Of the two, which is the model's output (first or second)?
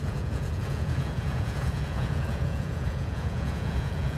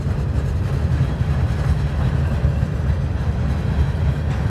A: first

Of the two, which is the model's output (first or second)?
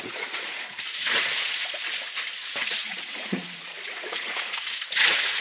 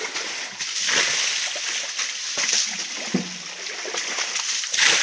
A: first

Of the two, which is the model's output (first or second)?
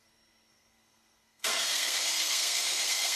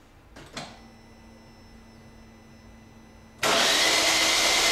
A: first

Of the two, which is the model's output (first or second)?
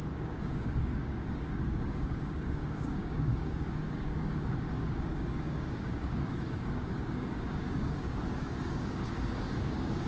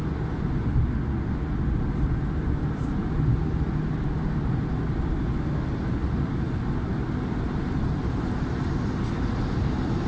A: first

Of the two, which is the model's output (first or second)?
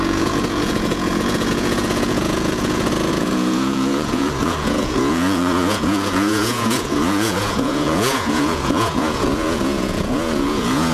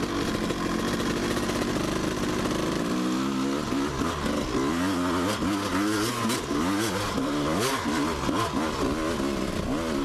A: first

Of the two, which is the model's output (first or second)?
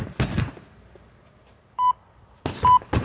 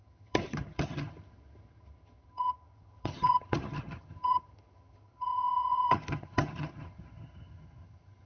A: second